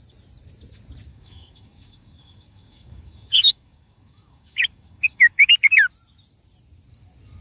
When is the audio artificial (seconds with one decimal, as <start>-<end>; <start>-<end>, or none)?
1.1-5.5